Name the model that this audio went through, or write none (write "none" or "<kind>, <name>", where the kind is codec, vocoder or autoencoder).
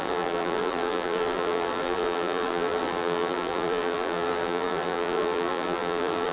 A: vocoder, BigVGAN v2